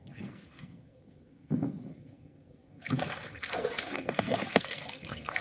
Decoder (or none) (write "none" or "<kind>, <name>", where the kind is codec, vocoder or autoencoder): codec, SNAC